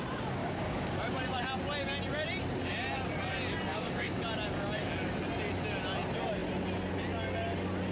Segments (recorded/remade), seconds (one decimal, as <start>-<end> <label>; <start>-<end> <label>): 0.0-0.4 recorded; 0.4-0.9 remade; 0.9-3.7 recorded; 3.7-4.2 remade; 4.2-7.9 recorded